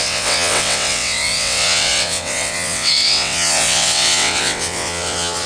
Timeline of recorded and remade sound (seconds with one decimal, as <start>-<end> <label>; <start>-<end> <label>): 0.0-5.5 remade